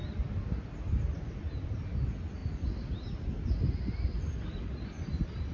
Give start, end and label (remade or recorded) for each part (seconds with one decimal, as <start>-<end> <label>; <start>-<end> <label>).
0.0-5.5 recorded